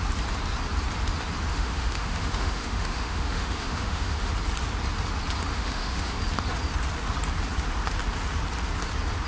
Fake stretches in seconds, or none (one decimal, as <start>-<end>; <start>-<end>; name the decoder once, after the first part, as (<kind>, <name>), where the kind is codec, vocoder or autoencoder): 1.5-4.3 (autoencoder, DAC-VAE); 5.5-6.2